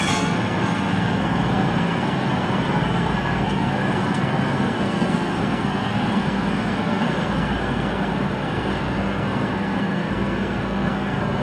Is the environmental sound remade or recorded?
remade